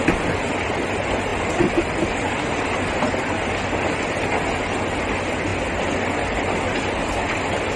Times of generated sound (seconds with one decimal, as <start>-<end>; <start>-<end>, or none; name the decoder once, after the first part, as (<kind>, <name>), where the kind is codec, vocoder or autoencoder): none